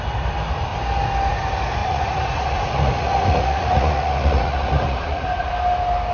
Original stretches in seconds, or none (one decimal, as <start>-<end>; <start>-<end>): 0.0-1.8; 5.5-6.1